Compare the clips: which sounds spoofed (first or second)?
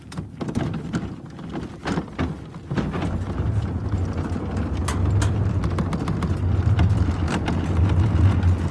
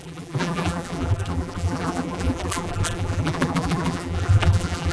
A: second